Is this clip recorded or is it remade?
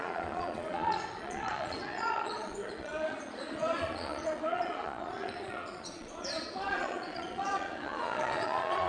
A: remade